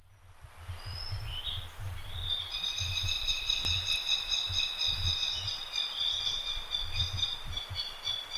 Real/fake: fake